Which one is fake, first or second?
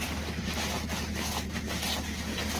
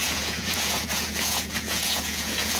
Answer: second